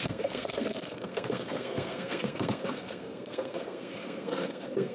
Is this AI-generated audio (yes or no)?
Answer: yes